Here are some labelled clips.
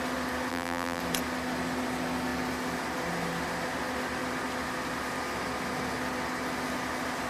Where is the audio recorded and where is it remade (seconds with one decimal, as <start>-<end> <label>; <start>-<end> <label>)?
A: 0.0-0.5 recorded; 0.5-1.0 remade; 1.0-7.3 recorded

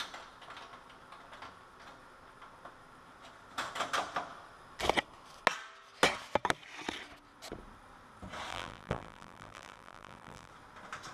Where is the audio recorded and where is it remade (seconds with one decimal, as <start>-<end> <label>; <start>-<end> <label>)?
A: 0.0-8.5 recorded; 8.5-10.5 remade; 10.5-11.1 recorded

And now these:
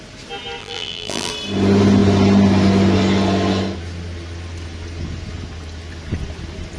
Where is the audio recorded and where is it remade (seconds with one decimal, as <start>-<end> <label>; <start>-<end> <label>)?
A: 0.0-0.6 recorded; 0.6-1.3 remade; 1.3-6.8 recorded

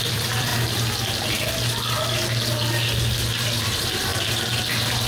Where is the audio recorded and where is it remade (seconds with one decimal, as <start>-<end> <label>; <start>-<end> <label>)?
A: 0.0-0.5 remade; 0.5-3.6 recorded; 3.6-4.1 remade; 4.1-5.1 recorded

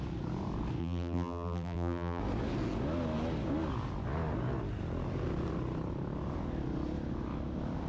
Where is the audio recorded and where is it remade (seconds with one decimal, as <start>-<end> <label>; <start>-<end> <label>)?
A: 0.0-0.8 recorded; 0.8-2.2 remade; 2.2-7.9 recorded